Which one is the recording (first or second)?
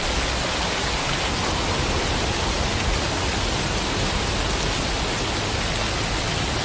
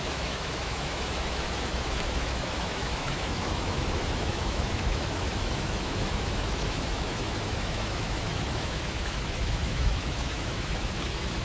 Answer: first